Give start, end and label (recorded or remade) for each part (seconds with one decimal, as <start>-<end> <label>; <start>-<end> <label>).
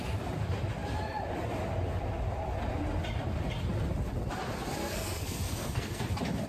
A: 0.0-4.8 recorded; 4.8-6.0 remade; 6.0-6.5 recorded